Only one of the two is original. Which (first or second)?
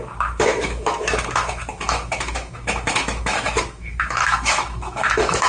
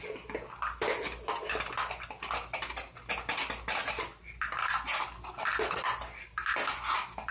second